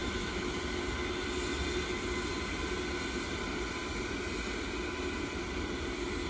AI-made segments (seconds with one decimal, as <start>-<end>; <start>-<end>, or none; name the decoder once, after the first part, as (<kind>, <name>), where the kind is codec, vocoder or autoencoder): 0.0-0.6 (autoencoder, DAC-VAE)